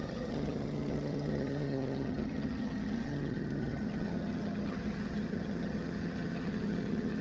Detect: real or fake fake